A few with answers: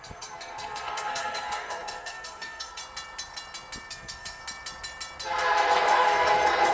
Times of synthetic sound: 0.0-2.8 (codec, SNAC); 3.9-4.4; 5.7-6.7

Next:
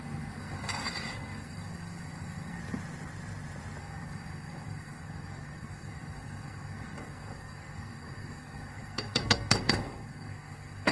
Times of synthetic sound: 0.0-2.6 (codec, SNAC); 3.8-10.9

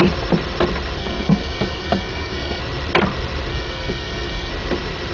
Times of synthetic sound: 1.0-2.6 (codec, SNAC); 3.5-4.5

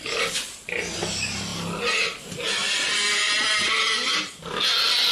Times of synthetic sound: none

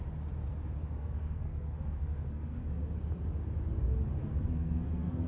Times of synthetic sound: 0.8-2.8 (codec, SNAC); 4.2-5.3

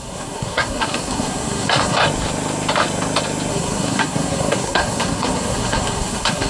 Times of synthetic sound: 0.0-2.0 (codec, SNAC); 3.5-6.5